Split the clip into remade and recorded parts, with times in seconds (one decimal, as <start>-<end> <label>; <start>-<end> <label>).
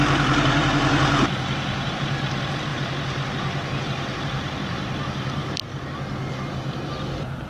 0.0-2.7 remade; 2.7-3.8 recorded; 3.8-5.4 remade; 5.4-6.9 recorded; 6.9-7.5 remade